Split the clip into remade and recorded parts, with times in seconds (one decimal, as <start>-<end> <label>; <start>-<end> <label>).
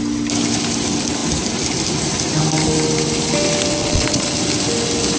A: 0.0-3.8 recorded; 3.8-4.3 remade; 4.3-5.2 recorded